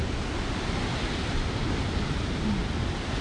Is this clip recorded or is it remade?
recorded